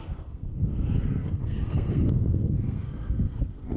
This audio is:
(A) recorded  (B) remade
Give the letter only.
B